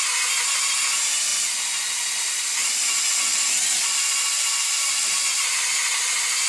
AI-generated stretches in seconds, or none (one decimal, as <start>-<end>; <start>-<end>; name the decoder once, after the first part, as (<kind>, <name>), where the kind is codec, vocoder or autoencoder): none